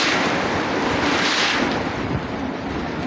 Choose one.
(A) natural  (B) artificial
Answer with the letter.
A